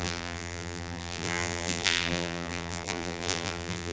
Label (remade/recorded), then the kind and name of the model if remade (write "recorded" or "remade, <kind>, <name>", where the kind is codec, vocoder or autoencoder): remade, vocoder, BigVGAN v2